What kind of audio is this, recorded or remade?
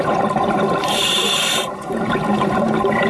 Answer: remade